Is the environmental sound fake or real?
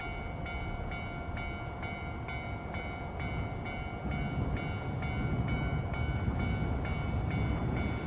real